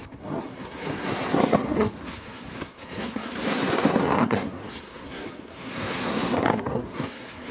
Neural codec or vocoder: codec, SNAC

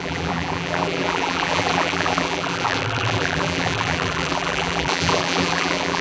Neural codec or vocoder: vocoder, BigVGAN v2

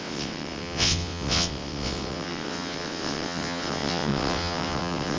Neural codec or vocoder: vocoder, WaveNeXt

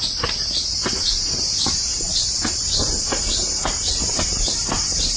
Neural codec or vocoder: vocoder, BigVGAN v2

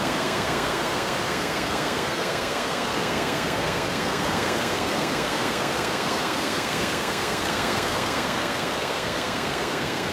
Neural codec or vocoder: codec, SNAC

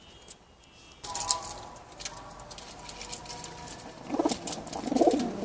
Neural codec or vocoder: none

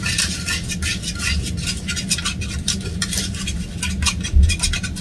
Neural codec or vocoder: none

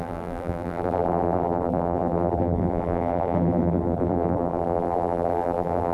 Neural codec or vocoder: vocoder, BigVGAN v2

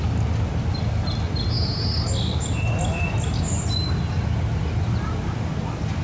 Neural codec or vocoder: none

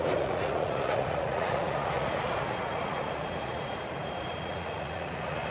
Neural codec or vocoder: vocoder, Vocos